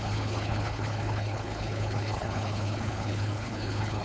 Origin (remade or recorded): remade